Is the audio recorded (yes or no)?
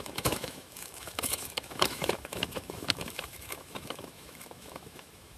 no